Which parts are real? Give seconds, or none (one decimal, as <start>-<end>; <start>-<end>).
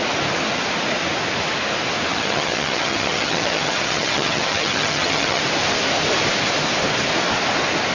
0.0-2.1; 5.4-7.9